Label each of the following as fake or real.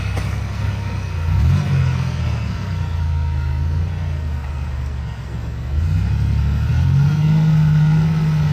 fake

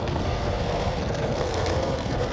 fake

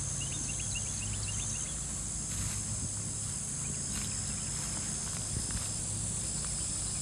real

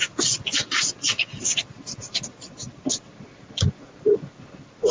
real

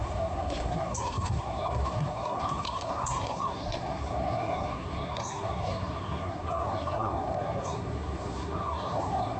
fake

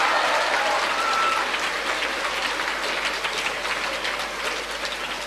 real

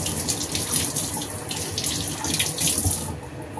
real